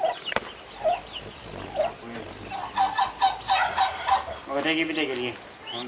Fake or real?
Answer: real